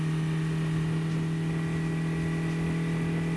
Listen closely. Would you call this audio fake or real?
real